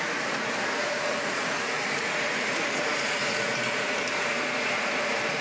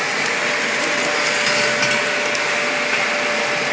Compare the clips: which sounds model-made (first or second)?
first